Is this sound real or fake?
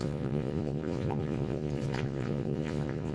fake